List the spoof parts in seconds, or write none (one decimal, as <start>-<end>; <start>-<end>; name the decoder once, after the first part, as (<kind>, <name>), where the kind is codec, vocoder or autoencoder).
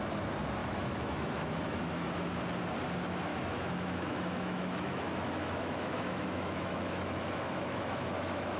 0.6-2.1 (autoencoder, DAC-VAE); 3.3-8.6